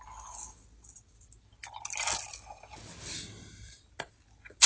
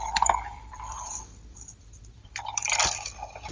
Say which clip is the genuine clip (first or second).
first